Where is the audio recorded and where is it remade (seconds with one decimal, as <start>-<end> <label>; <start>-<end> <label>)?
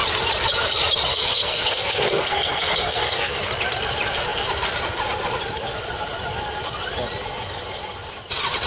0.0-1.1 recorded; 1.1-3.4 remade; 3.4-8.7 recorded